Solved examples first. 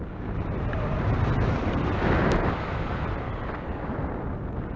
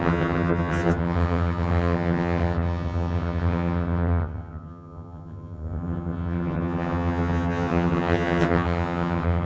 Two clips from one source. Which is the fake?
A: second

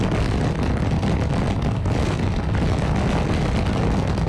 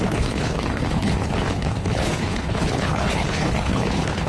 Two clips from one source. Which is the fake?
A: second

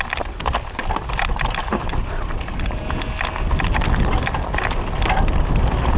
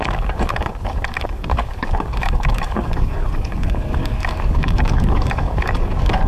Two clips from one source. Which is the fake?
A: second